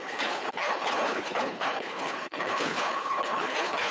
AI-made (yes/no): yes